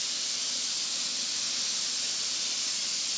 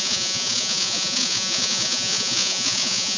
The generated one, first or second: second